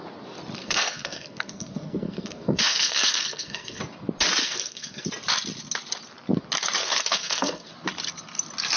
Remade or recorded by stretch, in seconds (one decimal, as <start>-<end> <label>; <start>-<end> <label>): 0.0-0.6 recorded; 0.6-3.8 remade; 3.8-4.4 recorded; 4.4-5.1 remade; 5.1-6.8 recorded; 6.8-7.7 remade; 7.7-8.8 recorded